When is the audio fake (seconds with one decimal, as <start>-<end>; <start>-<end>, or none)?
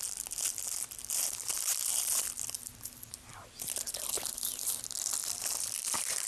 0.0-6.3